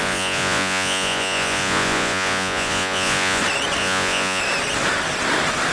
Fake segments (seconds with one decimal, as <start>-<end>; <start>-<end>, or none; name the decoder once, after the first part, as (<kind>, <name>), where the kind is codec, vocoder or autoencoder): 0.0-3.4 (vocoder, Vocos); 3.8-4.4